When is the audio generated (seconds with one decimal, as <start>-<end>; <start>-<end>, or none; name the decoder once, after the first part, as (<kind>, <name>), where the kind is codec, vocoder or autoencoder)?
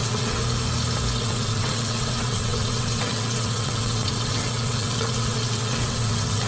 0.0-0.4 (vocoder, WaveNeXt); 1.2-6.5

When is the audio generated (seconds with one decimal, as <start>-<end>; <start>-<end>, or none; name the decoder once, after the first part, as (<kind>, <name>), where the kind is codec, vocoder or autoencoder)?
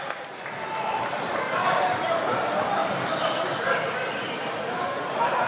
1.6-2.4 (vocoder, BigVGAN v2)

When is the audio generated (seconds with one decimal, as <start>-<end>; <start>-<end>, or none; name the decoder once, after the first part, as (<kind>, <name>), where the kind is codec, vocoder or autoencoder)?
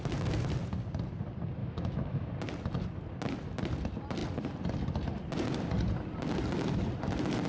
1.6-2.3 (autoencoder, DAC-VAE)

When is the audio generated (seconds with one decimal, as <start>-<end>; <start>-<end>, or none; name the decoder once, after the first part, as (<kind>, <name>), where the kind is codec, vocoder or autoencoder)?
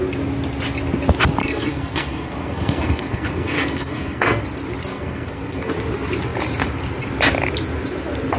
1.4-4.4 (codec, SNAC); 4.9-5.7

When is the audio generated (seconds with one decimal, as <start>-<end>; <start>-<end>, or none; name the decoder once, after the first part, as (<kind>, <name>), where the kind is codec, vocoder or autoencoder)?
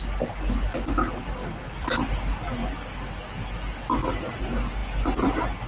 1.4-2.0 (vocoder, BigVGAN v2)